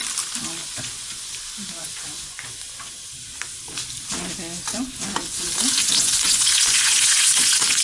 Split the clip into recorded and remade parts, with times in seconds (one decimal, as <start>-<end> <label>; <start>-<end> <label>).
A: 0.0-0.6 recorded; 0.6-1.3 remade; 1.3-1.8 recorded; 1.8-2.4 remade; 2.4-4.7 recorded; 4.7-7.8 remade

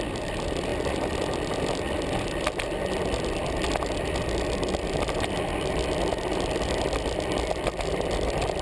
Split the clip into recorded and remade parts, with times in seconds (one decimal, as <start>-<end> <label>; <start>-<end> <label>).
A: 0.0-8.6 recorded

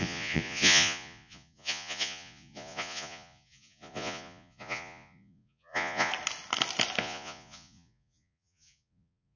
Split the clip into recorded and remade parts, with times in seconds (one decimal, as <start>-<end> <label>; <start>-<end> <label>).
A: 0.0-6.1 remade; 6.1-7.0 recorded; 7.0-9.4 remade

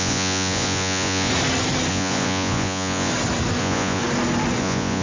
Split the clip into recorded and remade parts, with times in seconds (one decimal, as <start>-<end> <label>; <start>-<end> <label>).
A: 0.0-1.3 remade; 1.3-1.9 recorded; 1.9-3.1 remade; 3.1-3.6 recorded; 3.6-4.0 remade; 4.0-4.6 recorded; 4.6-5.0 remade

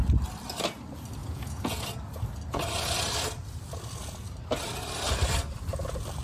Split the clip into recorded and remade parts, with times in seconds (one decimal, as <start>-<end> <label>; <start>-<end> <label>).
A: 0.0-1.2 recorded; 1.2-1.8 remade; 1.8-6.2 recorded

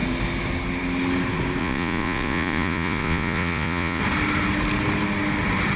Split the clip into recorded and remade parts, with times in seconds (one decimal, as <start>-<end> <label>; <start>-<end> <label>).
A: 0.0-1.6 recorded; 1.6-4.0 remade; 4.0-5.8 recorded